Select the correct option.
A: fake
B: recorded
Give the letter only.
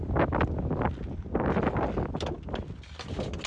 B